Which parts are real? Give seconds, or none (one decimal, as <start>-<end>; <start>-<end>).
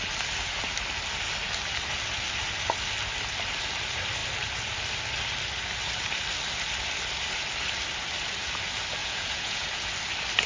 0.0-9.0; 9.9-10.5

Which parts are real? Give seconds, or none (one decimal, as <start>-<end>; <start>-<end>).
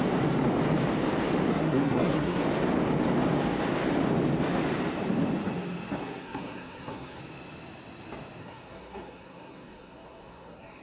0.0-1.5; 2.4-6.0; 7.2-8.4